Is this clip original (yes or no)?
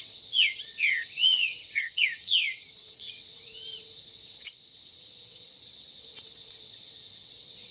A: no